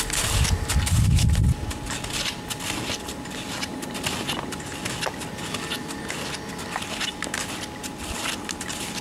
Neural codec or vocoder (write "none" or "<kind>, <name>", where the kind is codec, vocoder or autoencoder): none